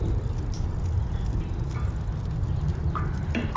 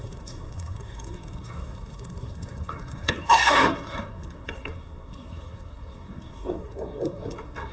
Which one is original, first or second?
first